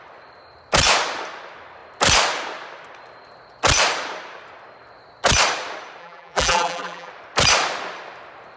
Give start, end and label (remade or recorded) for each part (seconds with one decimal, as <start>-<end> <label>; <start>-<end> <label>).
0.0-6.0 recorded; 6.0-7.1 remade; 7.1-8.6 recorded